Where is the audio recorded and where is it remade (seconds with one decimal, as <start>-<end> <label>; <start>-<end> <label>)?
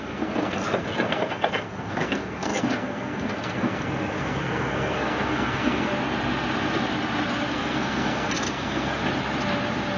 0.0-5.9 remade; 5.9-7.5 recorded; 7.5-9.0 remade; 9.0-10.0 recorded